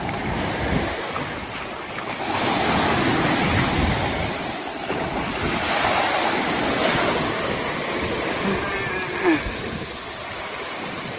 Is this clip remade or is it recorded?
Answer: recorded